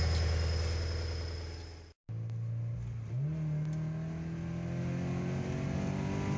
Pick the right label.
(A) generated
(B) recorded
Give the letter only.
B